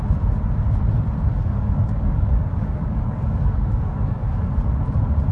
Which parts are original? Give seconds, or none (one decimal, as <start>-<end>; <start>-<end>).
0.0-1.3; 4.5-5.3